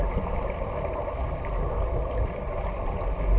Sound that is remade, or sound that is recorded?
recorded